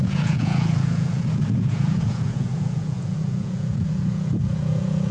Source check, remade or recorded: remade